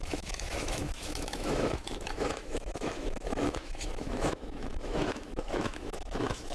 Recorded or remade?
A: remade